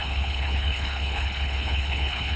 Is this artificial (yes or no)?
yes